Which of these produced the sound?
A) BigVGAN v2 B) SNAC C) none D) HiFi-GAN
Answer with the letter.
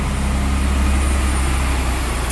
C